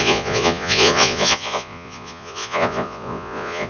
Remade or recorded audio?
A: remade